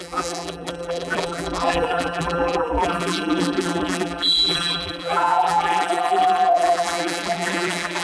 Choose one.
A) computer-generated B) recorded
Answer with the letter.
A